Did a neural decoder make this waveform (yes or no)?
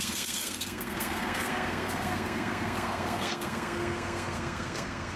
yes